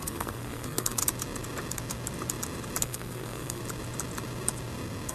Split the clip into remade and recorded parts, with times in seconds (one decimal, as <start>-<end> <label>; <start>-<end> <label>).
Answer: 0.0-1.0 remade; 1.0-2.8 recorded; 2.8-3.6 remade; 3.6-5.1 recorded